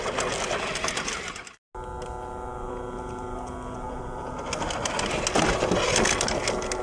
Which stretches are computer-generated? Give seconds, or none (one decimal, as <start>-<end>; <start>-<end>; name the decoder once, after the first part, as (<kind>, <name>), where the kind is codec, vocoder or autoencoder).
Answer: none